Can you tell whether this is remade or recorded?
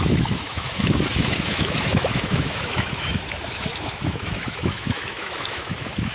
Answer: remade